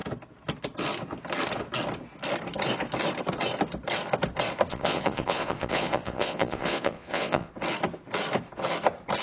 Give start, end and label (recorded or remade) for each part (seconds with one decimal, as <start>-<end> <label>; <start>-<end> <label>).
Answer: 0.0-4.7 recorded; 4.7-7.5 remade; 7.5-9.2 recorded